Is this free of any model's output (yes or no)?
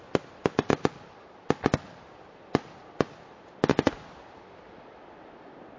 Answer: yes